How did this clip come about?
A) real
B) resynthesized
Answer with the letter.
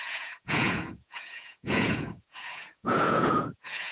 B